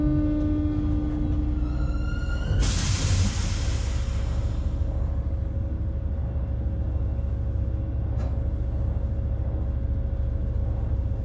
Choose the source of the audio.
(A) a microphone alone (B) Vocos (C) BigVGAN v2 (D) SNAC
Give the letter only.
A